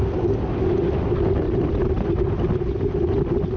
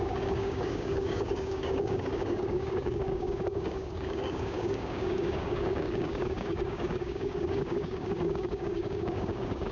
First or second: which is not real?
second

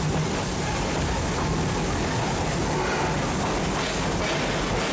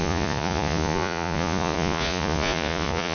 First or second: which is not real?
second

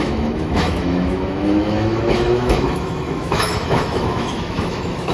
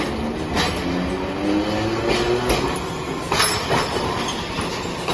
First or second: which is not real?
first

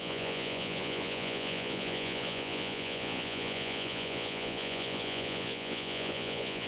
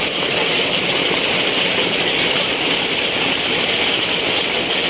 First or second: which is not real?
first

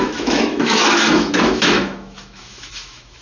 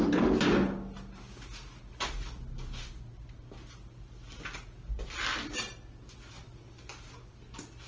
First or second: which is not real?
first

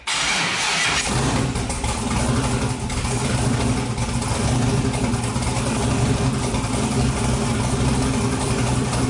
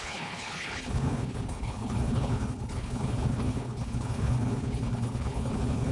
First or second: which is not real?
second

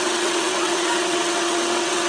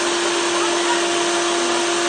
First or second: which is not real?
first